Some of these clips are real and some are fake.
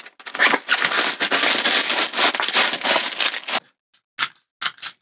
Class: real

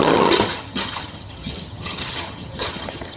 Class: fake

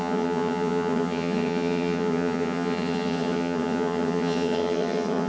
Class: fake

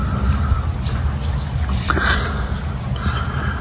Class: real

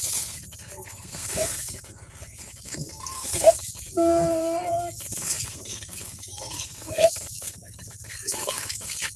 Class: fake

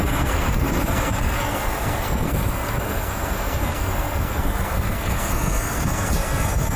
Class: fake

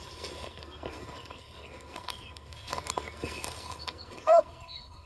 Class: fake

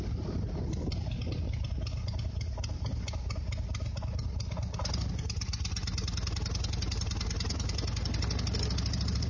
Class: real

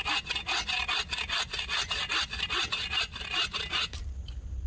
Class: real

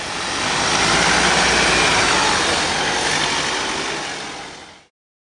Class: real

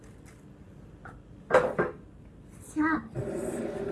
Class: real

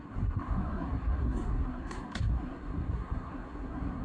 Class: fake